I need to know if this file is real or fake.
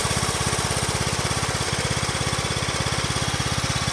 real